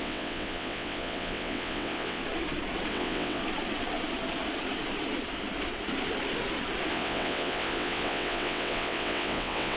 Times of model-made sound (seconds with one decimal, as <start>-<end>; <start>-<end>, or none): 0.0-2.2; 2.9-3.4; 6.9-9.8